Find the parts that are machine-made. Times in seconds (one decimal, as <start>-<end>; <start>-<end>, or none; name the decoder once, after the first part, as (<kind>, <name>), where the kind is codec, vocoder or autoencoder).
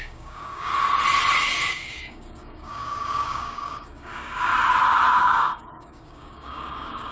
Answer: 0.0-0.7 (codec, DAC); 1.6-4.5; 5.2-7.1